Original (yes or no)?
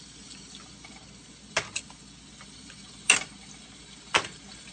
yes